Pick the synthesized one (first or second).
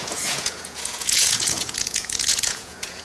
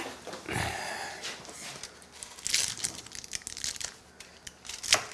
first